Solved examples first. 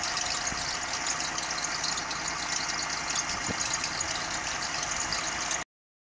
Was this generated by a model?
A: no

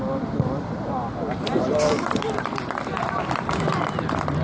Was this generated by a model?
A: yes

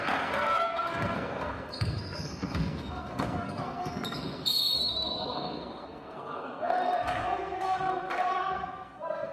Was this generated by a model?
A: yes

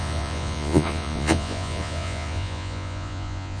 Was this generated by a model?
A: yes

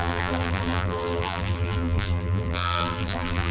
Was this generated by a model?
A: yes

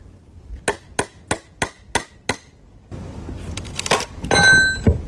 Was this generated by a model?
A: no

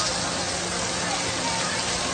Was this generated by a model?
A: no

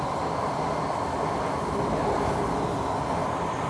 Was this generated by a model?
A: no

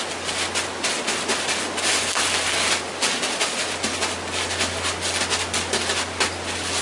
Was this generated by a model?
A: no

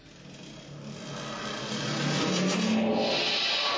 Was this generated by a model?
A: no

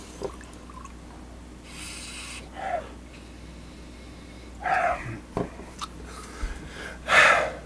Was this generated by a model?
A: no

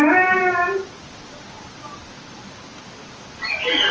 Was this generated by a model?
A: no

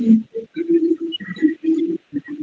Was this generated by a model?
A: no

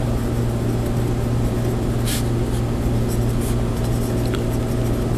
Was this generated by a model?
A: no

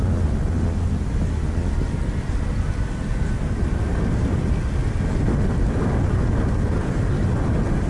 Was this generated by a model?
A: no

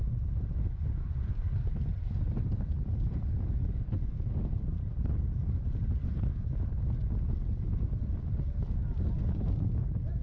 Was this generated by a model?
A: no